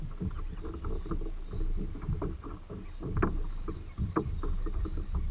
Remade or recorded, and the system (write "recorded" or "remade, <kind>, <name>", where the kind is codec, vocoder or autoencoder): recorded